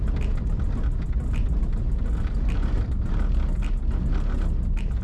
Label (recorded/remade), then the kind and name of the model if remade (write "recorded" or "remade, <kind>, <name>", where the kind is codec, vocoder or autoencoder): recorded